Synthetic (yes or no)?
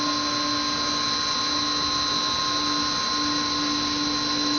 no